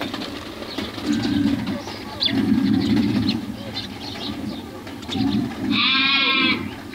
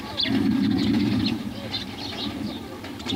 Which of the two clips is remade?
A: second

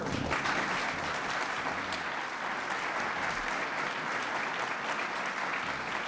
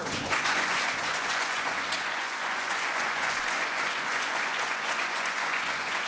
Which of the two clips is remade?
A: second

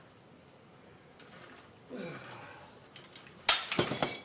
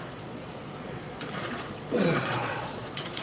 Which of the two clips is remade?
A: second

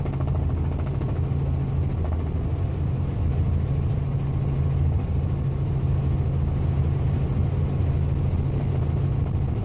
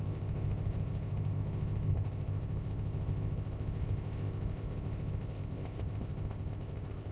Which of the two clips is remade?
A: second